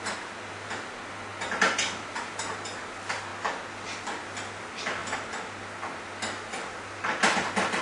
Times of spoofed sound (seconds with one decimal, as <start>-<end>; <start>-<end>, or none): none